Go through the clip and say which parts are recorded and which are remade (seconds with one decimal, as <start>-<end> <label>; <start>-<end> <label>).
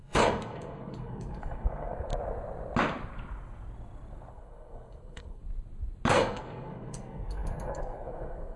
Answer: 0.0-2.1 remade; 2.1-4.3 recorded; 4.3-5.4 remade; 5.4-6.1 recorded; 6.1-8.6 remade